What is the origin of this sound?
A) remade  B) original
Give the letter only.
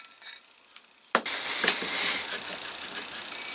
B